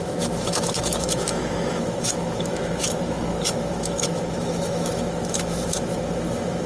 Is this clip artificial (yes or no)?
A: yes